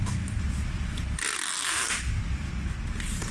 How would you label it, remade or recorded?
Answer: recorded